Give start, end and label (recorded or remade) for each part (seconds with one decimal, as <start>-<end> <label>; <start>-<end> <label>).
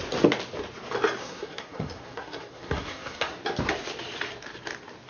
0.0-1.2 recorded; 1.2-3.4 remade; 3.4-5.1 recorded